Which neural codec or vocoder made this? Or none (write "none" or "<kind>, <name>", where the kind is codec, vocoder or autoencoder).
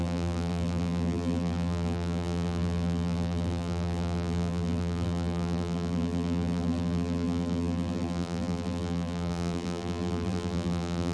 vocoder, BigVGAN v2